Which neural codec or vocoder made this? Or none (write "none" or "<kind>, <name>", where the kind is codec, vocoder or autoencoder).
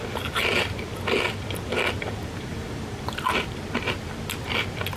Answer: vocoder, BigVGAN v2